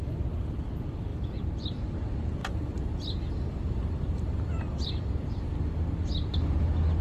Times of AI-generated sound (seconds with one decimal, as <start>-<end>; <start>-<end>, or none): 1.1-1.8; 2.4-5.5